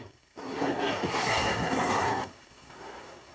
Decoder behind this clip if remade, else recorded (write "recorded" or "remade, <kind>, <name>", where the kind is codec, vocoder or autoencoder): remade, codec, SNAC